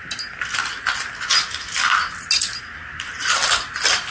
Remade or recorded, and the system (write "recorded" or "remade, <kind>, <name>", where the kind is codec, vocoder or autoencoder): recorded